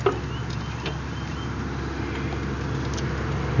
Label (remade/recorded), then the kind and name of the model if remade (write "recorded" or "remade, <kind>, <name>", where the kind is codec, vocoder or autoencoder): recorded